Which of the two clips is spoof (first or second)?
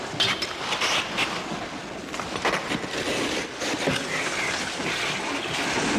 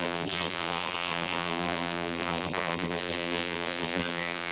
second